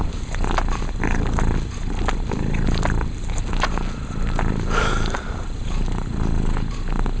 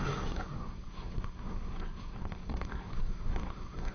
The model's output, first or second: second